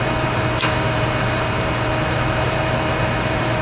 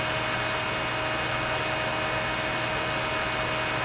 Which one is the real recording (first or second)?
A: second